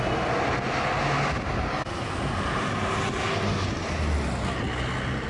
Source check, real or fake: real